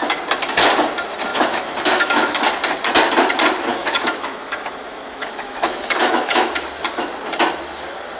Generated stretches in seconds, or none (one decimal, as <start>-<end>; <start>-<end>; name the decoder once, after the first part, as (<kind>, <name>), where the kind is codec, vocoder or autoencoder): 1.3-2.4 (autoencoder, DAC-VAE); 3.7-6.5

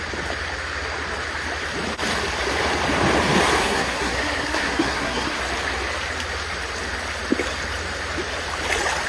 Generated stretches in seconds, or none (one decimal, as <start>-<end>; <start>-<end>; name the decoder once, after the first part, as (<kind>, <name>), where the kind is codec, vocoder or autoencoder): 3.6-5.4 (codec, SNAC)

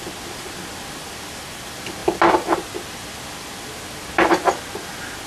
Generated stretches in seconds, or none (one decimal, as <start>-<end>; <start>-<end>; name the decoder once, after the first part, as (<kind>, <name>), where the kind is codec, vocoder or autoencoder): none